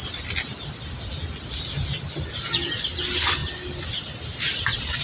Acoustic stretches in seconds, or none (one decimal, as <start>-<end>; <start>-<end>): 0.0-5.0